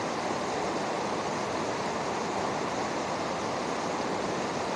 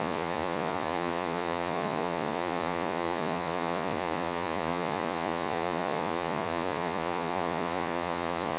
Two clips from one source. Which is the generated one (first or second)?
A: second